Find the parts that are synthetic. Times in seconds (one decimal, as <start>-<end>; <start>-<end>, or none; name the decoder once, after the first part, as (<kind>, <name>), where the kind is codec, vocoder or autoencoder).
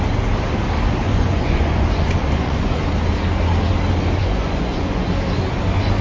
1.0-2.8 (vocoder, Vocos); 4.2-5.1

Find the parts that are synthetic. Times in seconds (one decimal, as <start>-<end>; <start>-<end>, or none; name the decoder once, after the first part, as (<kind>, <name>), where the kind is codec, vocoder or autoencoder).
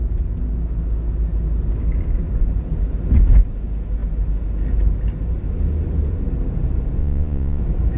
7.0-7.6 (vocoder, Vocos)